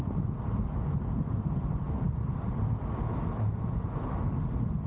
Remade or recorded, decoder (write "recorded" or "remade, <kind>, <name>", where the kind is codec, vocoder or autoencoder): recorded